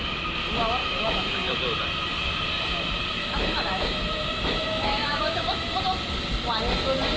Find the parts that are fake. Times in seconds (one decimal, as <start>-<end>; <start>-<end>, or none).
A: 0.8-1.5; 3.2-5.8

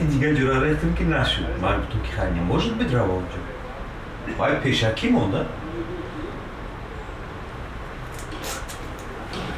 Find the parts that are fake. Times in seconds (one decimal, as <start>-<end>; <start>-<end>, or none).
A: none

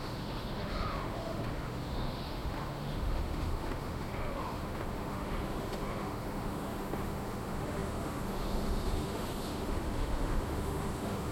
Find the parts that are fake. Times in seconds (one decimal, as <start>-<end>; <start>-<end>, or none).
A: 0.0-11.3

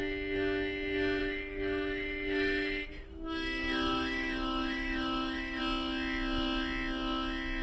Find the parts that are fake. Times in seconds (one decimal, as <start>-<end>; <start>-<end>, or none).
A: 1.2-5.6

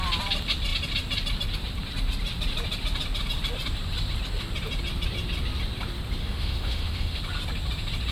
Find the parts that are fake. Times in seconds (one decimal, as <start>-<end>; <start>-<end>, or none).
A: 6.2-7.2

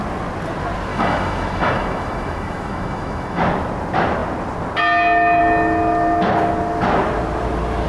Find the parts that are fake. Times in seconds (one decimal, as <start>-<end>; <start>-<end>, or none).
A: 0.9-3.4

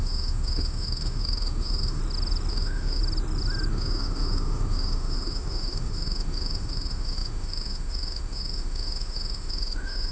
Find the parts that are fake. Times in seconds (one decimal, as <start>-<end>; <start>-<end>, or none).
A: 0.0-2.0; 2.5-3.0; 3.7-10.1